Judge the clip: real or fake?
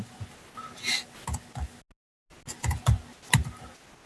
real